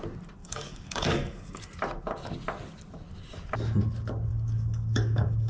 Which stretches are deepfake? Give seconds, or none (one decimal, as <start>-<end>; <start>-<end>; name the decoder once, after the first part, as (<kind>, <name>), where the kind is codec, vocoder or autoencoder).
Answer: 0.4-1.6 (codec, DAC); 4.3-5.5